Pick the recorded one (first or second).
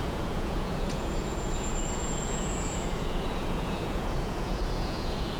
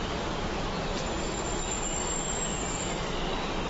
second